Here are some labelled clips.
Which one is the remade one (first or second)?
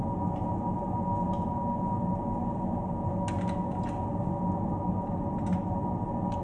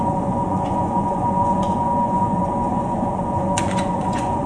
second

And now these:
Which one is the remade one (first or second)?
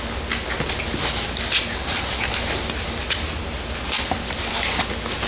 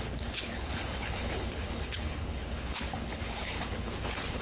second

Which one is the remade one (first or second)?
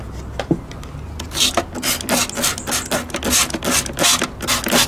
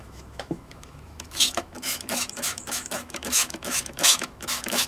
second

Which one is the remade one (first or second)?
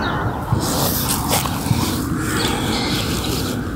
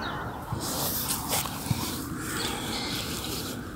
second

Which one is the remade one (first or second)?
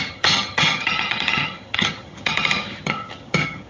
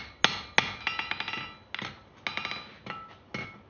first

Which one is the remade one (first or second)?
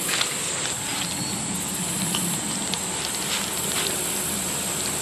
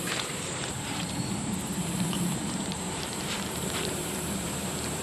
second